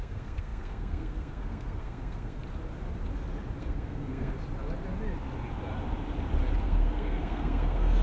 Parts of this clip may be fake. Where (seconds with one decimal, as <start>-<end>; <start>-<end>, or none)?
0.0-2.4; 3.6-4.3; 6.6-8.0